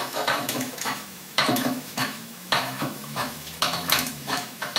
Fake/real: fake